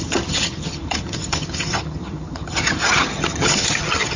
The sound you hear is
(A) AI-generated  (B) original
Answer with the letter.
A